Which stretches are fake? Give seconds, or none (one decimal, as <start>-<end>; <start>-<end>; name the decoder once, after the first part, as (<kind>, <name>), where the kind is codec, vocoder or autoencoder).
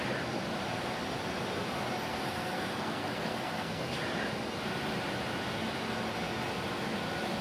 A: 2.1-3.8 (codec, SNAC)